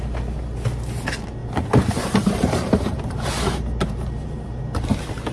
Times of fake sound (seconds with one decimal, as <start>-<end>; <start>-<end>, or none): 1.4-4.6